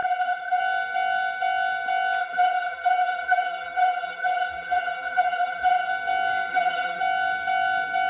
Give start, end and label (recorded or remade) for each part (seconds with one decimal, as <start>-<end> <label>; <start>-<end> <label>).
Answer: 0.0-0.6 remade; 0.6-2.2 recorded; 2.2-5.9 remade; 5.9-6.5 recorded; 6.5-7.0 remade; 7.0-8.1 recorded